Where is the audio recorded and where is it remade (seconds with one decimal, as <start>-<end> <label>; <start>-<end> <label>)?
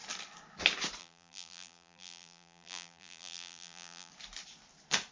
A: 0.0-1.0 recorded; 1.0-4.1 remade; 4.1-5.1 recorded